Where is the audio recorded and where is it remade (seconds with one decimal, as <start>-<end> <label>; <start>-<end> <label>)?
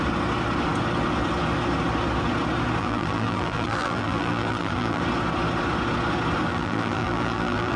0.0-2.8 recorded; 2.8-5.0 remade; 5.0-6.5 recorded; 6.5-7.8 remade